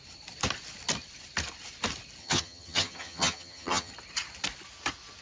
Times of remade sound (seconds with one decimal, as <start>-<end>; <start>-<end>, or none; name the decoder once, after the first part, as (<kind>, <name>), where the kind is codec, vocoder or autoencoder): 2.2-3.9 (vocoder, HiFi-GAN)